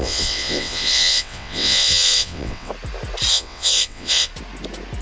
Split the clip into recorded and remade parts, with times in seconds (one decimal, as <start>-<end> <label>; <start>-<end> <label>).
0.0-2.7 remade; 2.7-3.3 recorded; 3.3-4.3 remade; 4.3-5.0 recorded